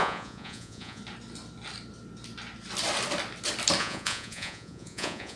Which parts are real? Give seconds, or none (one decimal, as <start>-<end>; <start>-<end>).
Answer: 1.0-3.8